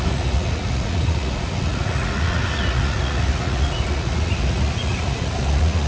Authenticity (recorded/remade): remade